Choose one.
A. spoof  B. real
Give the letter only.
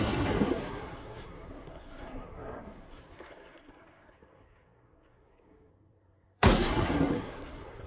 A